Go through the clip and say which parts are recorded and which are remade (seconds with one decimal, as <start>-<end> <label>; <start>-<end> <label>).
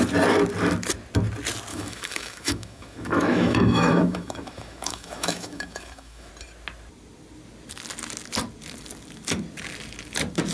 0.0-1.7 recorded; 1.7-6.3 remade; 6.3-10.5 recorded